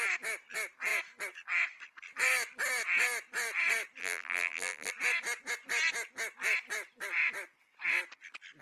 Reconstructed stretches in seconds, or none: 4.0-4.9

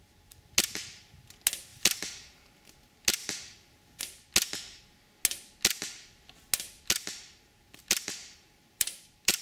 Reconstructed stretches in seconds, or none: 8.2-9.4

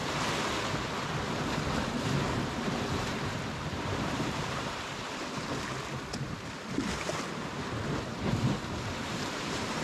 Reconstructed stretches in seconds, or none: 1.9-4.9; 7.9-9.8

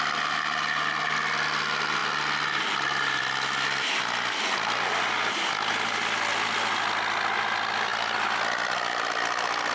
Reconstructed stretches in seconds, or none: 7.9-9.7

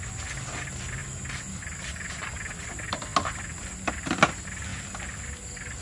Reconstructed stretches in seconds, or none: 1.0-2.7

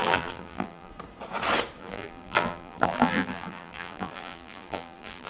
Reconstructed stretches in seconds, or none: 0.0-0.9; 1.8-5.3